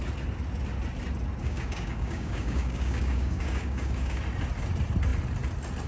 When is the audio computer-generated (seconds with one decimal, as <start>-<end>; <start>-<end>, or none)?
1.4-4.2